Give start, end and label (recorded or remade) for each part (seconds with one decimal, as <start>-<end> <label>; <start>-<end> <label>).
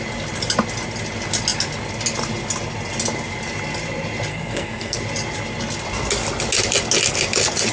0.0-4.3 recorded; 4.3-5.0 remade; 5.0-7.7 recorded